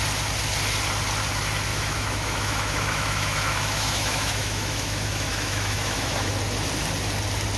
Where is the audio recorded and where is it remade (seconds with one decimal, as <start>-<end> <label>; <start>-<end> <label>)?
0.0-1.7 recorded; 1.7-6.3 remade; 6.3-7.6 recorded